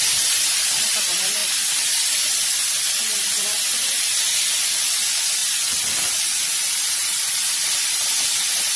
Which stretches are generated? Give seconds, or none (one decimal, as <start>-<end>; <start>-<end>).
1.4-2.8; 5.4-8.1